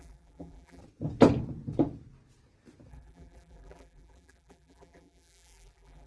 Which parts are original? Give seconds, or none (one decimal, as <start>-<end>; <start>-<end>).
0.8-2.9